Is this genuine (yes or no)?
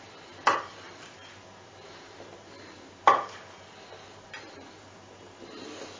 yes